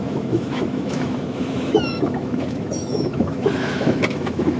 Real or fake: fake